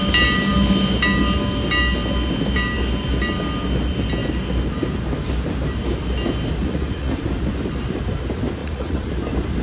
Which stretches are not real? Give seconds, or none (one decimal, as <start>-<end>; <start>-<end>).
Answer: 6.6-7.1; 8.6-9.1